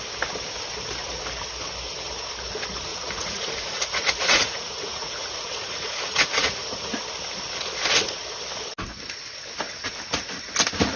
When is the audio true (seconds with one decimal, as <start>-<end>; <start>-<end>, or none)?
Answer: 0.0-2.9; 7.0-11.0